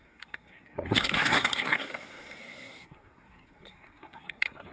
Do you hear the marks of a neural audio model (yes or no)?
yes